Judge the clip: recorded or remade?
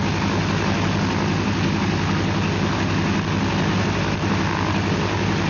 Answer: recorded